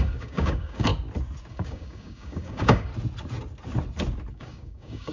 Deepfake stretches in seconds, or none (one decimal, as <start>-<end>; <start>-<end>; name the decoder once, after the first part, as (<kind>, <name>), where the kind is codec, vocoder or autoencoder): 0.0-0.9 (codec, DAC); 1.5-2.9; 4.3-5.1